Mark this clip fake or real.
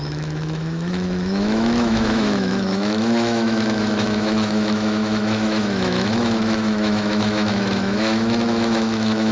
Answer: fake